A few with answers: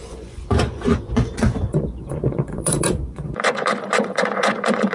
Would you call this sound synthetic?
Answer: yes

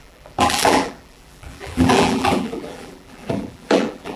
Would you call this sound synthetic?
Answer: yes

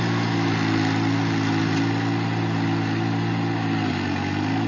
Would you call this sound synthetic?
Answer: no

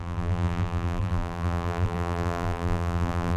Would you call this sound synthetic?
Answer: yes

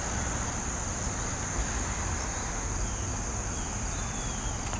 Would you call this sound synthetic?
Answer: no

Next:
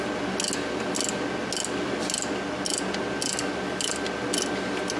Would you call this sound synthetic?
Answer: no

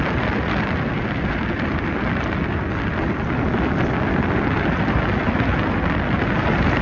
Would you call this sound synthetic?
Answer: no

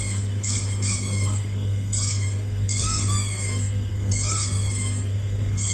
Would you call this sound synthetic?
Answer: yes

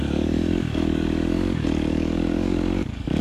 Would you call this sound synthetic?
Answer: yes